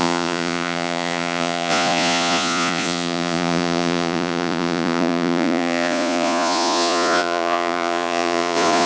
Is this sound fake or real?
fake